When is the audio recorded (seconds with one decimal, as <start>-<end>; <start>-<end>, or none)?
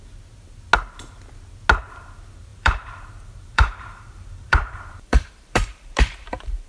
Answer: 0.0-2.5